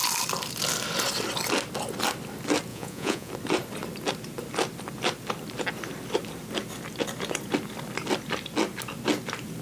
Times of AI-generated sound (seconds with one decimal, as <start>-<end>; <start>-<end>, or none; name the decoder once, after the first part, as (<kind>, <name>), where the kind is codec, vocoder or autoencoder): 2.7-3.3 (vocoder, Vocos)